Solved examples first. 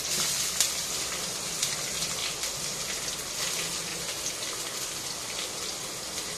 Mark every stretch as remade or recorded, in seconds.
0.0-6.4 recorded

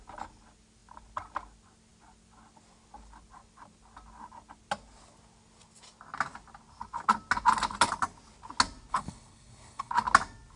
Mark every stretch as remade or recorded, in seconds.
0.0-8.9 recorded; 8.9-9.9 remade; 9.9-10.6 recorded

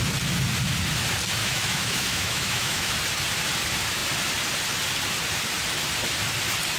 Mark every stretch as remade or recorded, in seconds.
0.0-1.4 recorded; 1.4-2.9 remade; 2.9-6.8 recorded